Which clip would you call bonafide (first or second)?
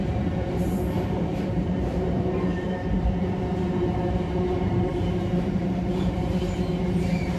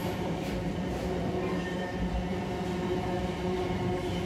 second